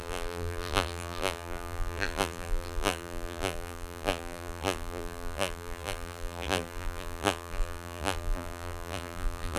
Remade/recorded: remade